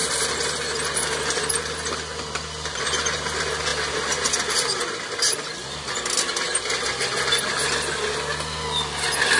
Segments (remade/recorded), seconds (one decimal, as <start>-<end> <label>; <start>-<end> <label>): 0.0-9.4 recorded

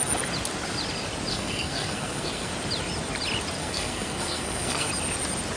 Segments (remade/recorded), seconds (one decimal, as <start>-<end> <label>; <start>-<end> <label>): 0.0-1.3 recorded; 1.3-2.5 remade; 2.5-3.6 recorded; 3.6-4.9 remade; 4.9-5.6 recorded